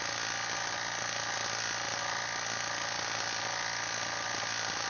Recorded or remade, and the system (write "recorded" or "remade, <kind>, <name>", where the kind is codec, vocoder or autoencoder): recorded